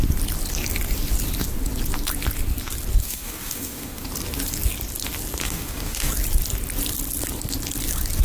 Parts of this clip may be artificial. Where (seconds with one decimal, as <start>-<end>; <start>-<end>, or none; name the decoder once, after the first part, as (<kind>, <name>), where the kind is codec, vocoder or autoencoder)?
3.0-4.1 (codec, DAC); 5.4-6.1